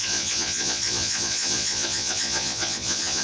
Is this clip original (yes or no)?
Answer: no